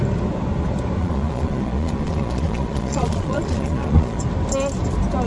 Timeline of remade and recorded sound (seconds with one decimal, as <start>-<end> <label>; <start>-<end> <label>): 0.0-1.0 recorded; 1.0-4.2 remade; 4.2-5.3 recorded